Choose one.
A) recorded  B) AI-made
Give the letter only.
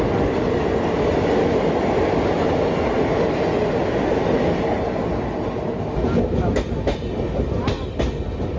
A